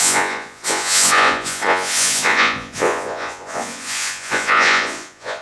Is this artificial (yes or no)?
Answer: yes